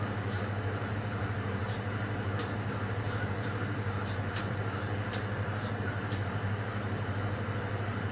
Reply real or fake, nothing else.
fake